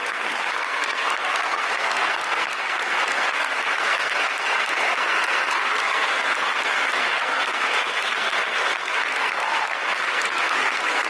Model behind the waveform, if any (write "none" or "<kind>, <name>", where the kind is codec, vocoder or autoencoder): codec, SNAC